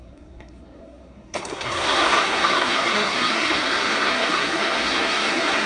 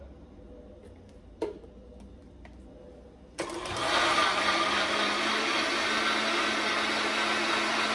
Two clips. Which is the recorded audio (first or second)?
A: second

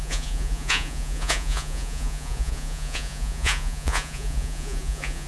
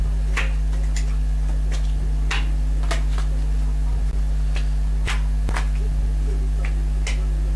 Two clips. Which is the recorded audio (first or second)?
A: second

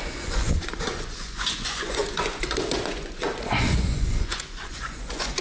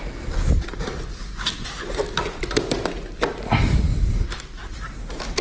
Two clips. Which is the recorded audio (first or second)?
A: second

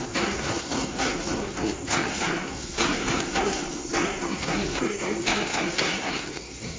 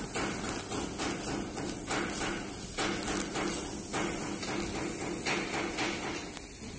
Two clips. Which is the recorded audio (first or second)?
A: second